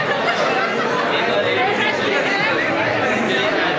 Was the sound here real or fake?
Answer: real